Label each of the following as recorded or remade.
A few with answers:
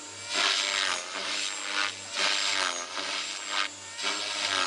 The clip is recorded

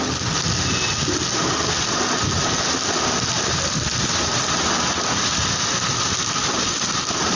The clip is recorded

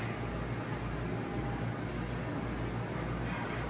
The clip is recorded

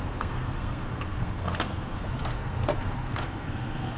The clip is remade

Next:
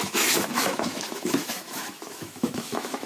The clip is remade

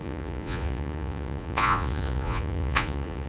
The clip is remade